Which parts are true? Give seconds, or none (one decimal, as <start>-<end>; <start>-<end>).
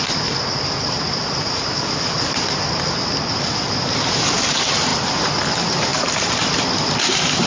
0.0-7.5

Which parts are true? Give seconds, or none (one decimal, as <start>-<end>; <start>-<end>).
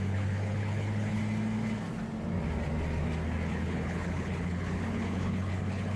1.2-3.5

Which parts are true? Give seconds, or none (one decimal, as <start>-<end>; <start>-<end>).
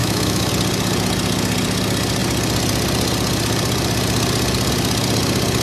0.5-5.6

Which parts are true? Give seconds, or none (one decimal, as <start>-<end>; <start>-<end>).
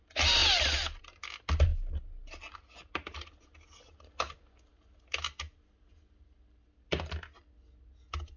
0.0-8.4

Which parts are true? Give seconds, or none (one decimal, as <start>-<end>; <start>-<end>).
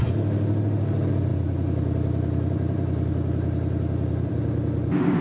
0.0-1.3; 4.3-5.2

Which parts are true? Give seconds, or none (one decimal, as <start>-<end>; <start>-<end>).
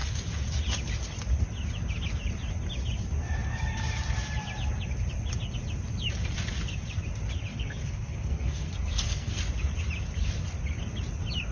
0.0-7.5; 9.4-11.5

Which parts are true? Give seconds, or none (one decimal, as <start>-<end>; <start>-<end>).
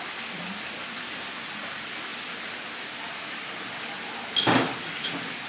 0.0-5.5